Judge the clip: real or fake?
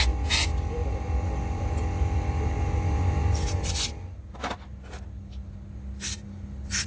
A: real